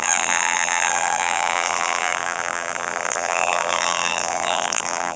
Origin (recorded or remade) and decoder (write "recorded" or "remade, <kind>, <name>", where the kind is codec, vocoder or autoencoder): remade, vocoder, BigVGAN v2